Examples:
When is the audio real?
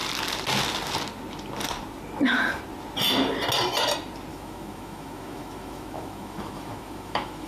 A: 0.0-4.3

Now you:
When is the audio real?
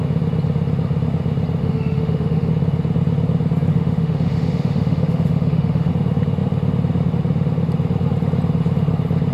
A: 0.0-1.6; 2.5-3.7; 5.9-9.3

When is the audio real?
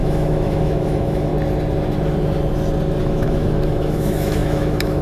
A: 1.3-3.0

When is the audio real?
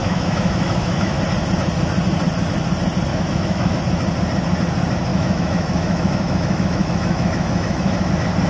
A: 1.2-3.1; 3.8-5.1; 8.1-8.5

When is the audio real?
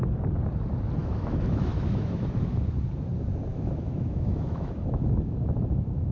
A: 0.0-1.0; 2.6-3.5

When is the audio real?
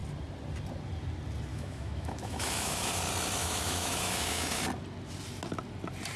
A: 0.0-1.5; 3.0-3.4; 4.6-6.2